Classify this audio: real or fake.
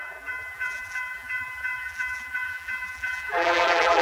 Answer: fake